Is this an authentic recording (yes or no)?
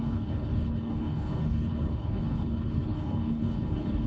no